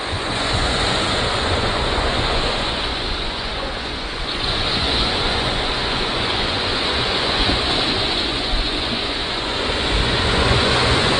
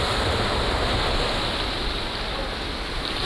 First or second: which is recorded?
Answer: second